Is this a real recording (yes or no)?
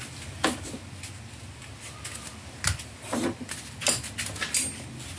yes